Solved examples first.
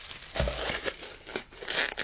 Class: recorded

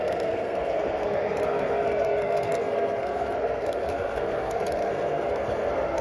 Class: remade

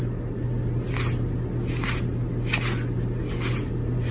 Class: recorded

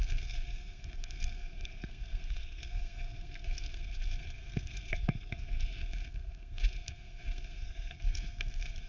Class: remade